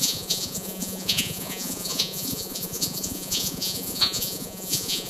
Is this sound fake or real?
fake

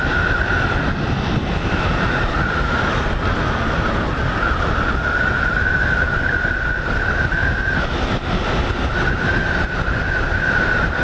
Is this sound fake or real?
real